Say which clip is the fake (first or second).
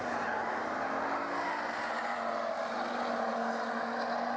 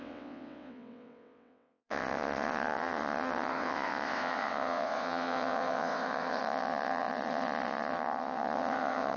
second